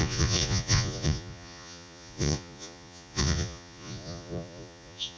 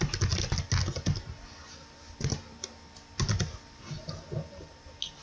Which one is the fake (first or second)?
first